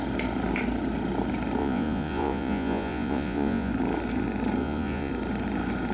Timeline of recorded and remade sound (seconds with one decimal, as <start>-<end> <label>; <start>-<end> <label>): 0.0-1.6 recorded; 1.6-3.7 remade; 3.7-4.6 recorded; 4.6-5.1 remade; 5.1-5.9 recorded